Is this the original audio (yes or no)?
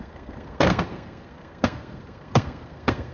no